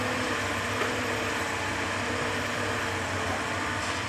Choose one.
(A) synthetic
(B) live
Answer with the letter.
B